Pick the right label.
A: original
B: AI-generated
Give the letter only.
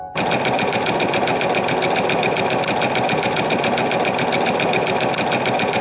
A